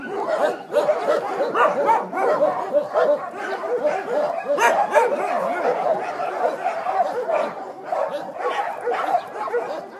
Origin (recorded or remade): recorded